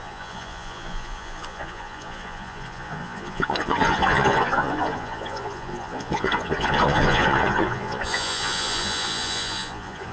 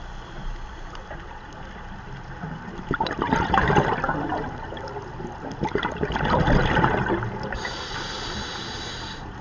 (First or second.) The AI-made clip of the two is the first